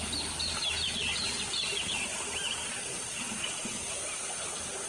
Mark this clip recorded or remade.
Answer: recorded